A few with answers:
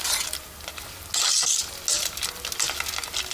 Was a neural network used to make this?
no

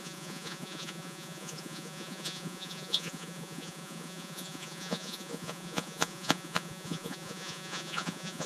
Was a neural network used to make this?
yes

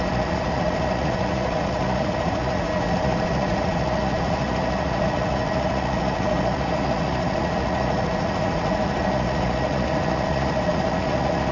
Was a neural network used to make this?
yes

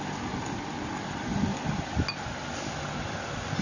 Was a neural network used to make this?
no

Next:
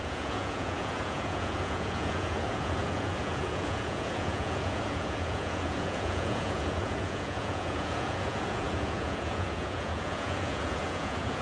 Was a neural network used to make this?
yes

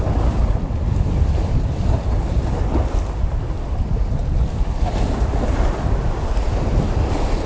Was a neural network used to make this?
no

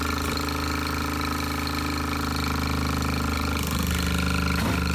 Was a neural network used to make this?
no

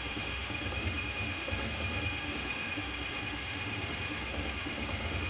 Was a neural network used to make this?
yes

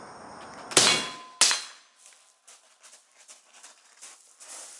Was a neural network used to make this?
no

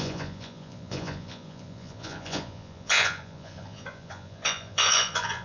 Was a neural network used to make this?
yes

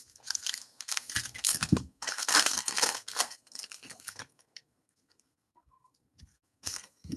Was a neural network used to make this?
yes